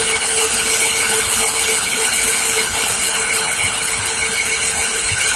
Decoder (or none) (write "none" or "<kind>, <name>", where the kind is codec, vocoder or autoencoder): codec, HILCodec